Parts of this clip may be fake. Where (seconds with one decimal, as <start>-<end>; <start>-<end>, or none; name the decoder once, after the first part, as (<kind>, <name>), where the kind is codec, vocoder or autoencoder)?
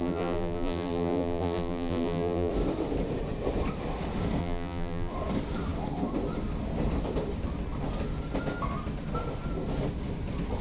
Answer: 0.0-2.5 (vocoder, BigVGAN v2); 4.4-5.1